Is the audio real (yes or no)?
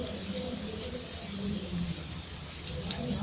yes